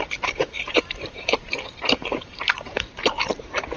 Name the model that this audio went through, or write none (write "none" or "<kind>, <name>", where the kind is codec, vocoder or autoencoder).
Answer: vocoder, BigVGAN v2